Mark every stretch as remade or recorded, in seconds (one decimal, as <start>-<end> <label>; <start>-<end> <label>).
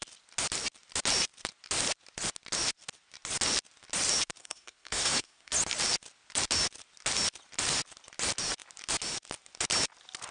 0.0-4.4 recorded; 4.4-5.5 remade; 5.5-10.3 recorded